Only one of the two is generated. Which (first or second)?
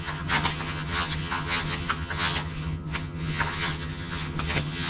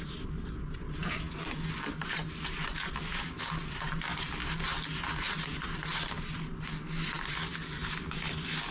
first